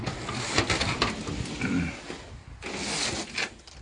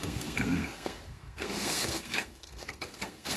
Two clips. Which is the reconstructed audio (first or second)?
second